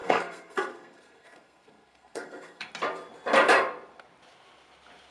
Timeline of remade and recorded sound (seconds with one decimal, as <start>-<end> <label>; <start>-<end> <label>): 0.0-2.7 remade; 2.7-5.1 recorded

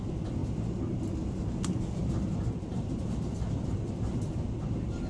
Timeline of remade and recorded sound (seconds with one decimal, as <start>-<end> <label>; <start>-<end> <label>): 0.0-5.1 recorded

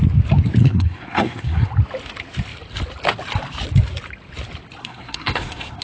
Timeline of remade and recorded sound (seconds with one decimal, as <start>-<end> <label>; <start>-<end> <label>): 0.0-0.6 recorded; 0.6-1.7 remade; 1.7-4.8 recorded; 4.8-5.8 remade